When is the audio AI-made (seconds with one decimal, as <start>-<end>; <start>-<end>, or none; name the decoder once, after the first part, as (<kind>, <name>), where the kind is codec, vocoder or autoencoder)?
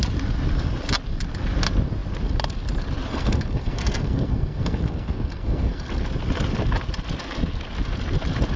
3.1-5.9 (codec, SNAC)